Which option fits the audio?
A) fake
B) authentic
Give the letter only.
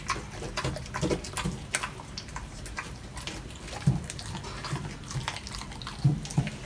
B